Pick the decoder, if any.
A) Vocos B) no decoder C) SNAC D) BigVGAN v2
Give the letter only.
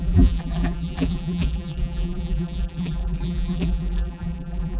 D